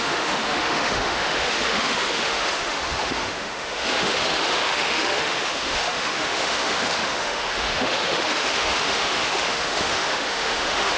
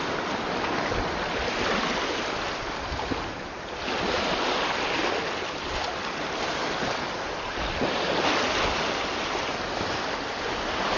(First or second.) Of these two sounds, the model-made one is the first